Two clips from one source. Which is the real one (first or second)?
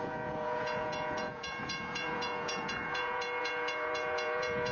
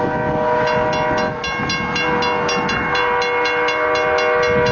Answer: second